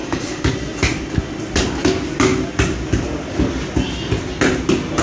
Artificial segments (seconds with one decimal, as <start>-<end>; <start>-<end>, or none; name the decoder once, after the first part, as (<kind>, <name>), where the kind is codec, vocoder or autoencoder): 0.0-0.5 (codec, DAC)